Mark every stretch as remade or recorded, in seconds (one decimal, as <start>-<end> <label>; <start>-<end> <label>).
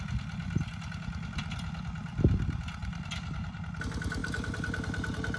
0.0-2.1 recorded; 2.1-3.6 remade; 3.6-4.2 recorded; 4.2-5.4 remade